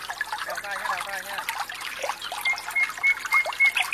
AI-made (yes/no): no